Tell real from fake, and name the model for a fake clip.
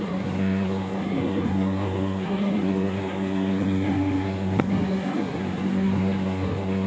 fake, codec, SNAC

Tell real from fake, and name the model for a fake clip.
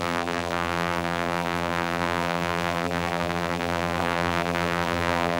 fake, vocoder, BigVGAN v2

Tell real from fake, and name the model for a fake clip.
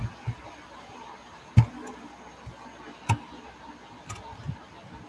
real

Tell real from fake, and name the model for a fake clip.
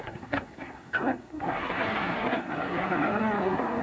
fake, codec, SNAC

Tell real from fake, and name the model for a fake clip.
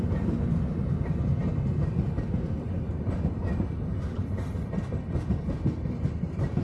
real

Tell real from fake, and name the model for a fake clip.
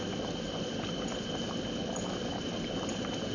real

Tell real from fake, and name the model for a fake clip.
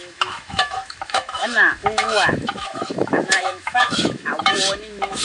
fake, autoencoder, DAC-VAE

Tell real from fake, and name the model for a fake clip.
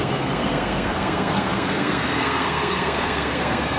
fake, codec, SNAC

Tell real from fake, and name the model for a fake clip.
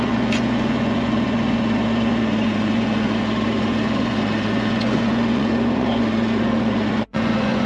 fake, vocoder, Vocos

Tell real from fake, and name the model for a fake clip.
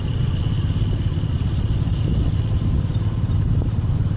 real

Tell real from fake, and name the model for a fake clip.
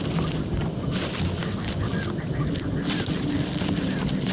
real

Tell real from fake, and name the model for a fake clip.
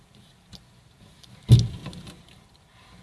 real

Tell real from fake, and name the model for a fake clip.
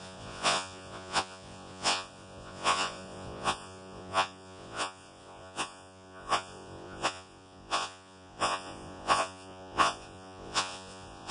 fake, vocoder, Vocos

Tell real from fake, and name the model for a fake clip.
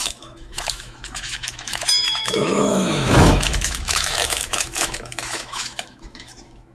fake, autoencoder, DAC-VAE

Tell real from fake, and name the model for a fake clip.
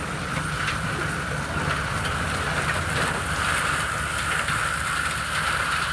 real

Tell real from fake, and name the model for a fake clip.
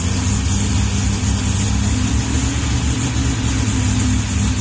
real